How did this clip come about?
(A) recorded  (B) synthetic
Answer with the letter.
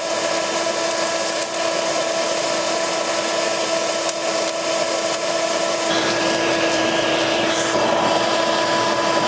B